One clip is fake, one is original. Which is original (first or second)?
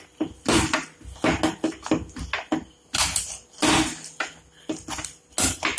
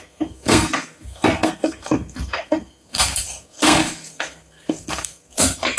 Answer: first